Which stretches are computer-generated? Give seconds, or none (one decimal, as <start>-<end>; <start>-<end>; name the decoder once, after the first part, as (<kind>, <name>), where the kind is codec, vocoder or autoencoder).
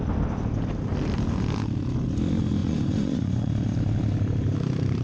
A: 2.6-3.5 (vocoder, Vocos)